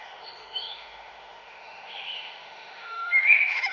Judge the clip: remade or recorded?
remade